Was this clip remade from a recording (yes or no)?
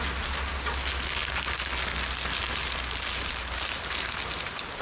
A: no